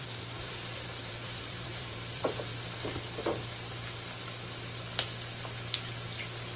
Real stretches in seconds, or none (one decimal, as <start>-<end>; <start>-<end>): 2.5-6.6